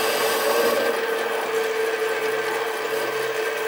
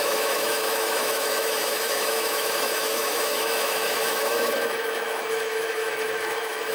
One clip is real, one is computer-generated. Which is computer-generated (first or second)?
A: second